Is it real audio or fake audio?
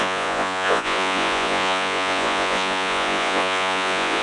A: fake